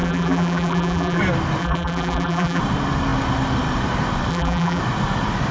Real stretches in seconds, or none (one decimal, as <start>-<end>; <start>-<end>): 1.2-1.6; 2.6-4.3; 4.8-5.5